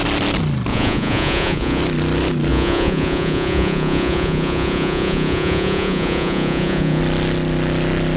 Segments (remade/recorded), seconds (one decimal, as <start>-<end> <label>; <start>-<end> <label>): 0.0-0.7 recorded; 0.7-1.8 remade; 1.8-2.5 recorded; 2.5-7.0 remade; 7.0-8.2 recorded